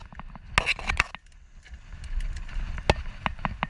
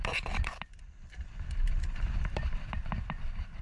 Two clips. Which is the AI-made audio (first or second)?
second